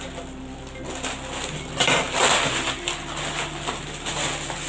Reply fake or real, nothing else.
real